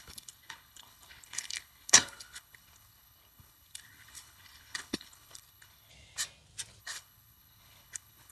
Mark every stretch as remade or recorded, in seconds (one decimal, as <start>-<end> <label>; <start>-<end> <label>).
0.0-5.9 remade; 5.9-6.8 recorded; 6.8-8.3 remade

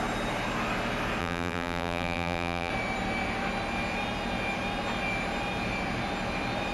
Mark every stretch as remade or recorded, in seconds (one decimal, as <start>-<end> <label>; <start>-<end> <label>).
0.0-1.2 recorded; 1.2-2.7 remade; 2.7-6.7 recorded